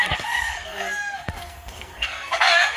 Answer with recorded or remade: remade